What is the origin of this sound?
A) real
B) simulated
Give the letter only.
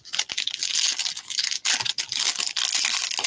A